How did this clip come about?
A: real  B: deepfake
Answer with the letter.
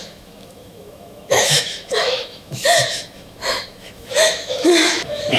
B